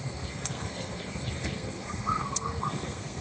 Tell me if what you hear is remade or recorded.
remade